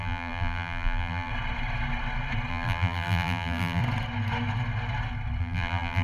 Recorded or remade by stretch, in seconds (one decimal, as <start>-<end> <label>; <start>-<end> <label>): 0.0-1.3 remade; 1.3-2.5 recorded; 2.5-3.8 remade; 3.8-5.4 recorded; 5.4-6.0 remade